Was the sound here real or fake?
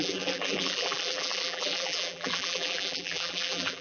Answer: fake